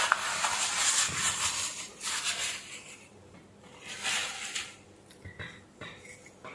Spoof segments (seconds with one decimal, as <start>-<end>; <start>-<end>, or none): 2.4-3.2